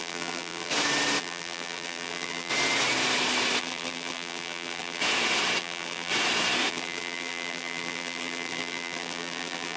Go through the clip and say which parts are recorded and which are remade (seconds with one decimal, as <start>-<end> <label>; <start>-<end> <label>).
0.0-0.7 remade; 0.7-1.2 recorded; 1.2-2.5 remade; 2.5-3.6 recorded; 3.6-5.0 remade; 5.0-5.6 recorded; 5.6-6.1 remade; 6.1-6.7 recorded; 6.7-9.8 remade